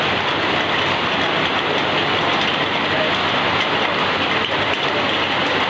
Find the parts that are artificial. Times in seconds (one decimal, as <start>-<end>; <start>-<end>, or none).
0.4-1.5